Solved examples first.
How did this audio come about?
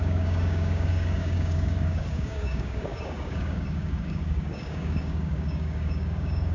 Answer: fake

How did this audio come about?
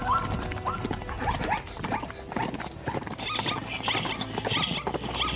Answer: real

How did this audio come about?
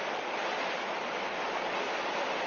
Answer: real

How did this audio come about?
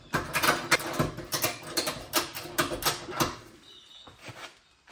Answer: real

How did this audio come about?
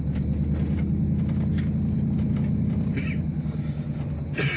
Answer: real